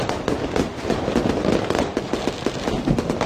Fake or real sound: real